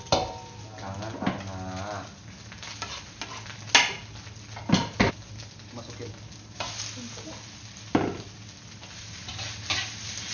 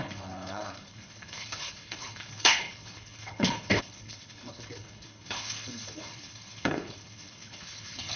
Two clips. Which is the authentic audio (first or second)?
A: first